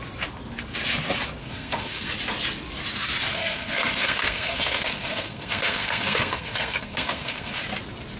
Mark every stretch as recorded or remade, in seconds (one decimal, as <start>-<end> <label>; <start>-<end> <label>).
0.0-1.4 recorded; 1.4-2.1 remade; 2.1-3.3 recorded; 3.3-7.6 remade; 7.6-8.2 recorded